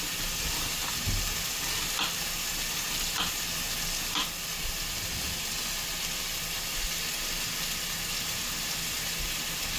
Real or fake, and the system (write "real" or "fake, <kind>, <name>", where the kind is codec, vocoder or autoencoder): fake, vocoder, BigVGAN v2